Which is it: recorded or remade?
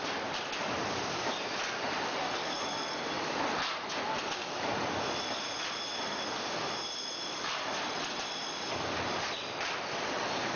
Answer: remade